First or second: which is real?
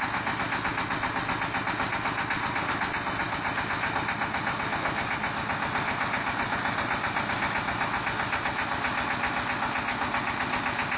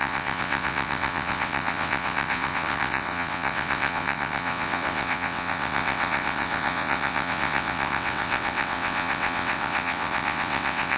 first